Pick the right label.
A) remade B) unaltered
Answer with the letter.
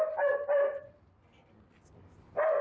B